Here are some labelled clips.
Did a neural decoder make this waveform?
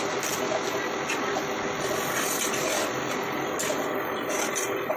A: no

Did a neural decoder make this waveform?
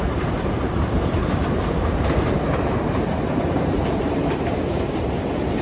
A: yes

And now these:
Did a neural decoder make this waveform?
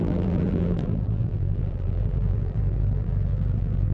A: yes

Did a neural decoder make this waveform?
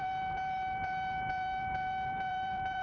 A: yes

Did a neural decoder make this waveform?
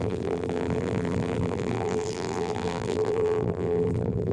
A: yes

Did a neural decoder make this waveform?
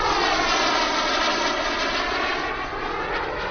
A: no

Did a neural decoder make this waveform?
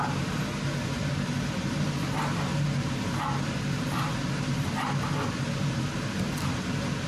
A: yes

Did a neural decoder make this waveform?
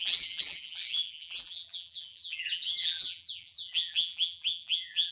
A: yes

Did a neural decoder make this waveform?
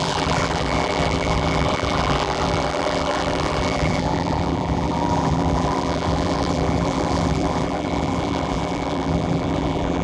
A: yes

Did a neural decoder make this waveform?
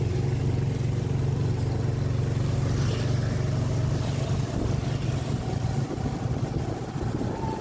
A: no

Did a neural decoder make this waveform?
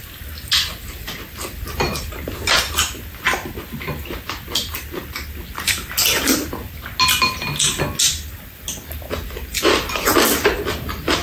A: no